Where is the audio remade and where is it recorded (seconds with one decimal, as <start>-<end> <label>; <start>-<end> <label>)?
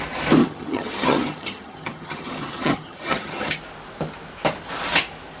0.0-0.4 recorded; 0.4-3.6 remade; 3.6-5.4 recorded